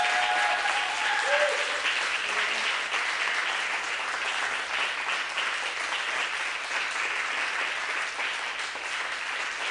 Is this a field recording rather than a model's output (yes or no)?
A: yes